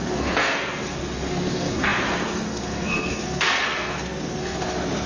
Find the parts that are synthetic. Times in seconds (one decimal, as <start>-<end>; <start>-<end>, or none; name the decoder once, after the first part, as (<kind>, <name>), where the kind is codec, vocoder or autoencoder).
0.0-5.1 (codec, SNAC)